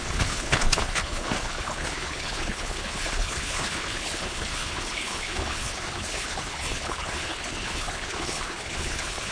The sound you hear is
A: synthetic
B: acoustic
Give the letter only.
A